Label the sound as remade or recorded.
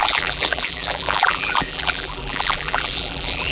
remade